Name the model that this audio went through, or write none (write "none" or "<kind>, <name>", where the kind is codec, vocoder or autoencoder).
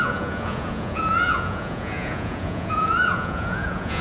vocoder, Vocos